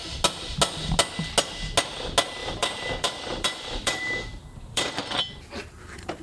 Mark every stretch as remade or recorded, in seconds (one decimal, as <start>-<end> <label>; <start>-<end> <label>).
0.0-2.4 recorded; 2.4-5.2 remade; 5.2-6.2 recorded